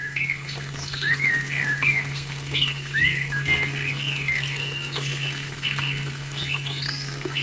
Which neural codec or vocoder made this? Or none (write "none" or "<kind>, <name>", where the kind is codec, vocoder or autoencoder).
codec, SNAC